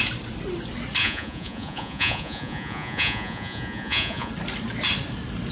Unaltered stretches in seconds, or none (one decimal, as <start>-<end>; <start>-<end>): 0.0-1.0; 4.3-5.5